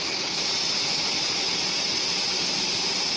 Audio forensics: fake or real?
fake